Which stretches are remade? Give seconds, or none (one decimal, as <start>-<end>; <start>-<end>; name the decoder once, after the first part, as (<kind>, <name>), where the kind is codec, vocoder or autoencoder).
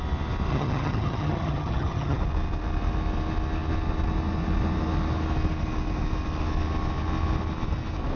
0.5-2.2 (vocoder, HiFi-GAN)